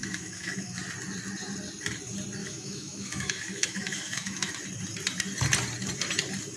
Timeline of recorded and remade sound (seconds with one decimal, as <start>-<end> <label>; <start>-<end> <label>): 0.0-0.8 remade; 0.8-2.4 recorded; 2.4-4.5 remade; 4.5-6.6 recorded